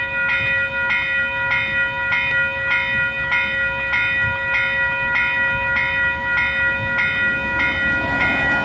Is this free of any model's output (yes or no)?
yes